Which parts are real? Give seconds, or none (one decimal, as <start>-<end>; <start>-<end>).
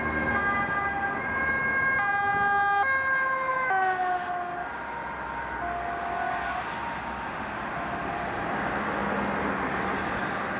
0.0-10.6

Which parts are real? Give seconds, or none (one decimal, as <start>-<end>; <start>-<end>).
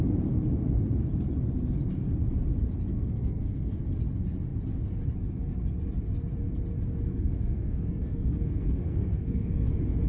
0.0-2.9; 3.7-7.1; 9.7-10.1